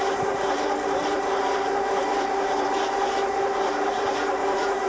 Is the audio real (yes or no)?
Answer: no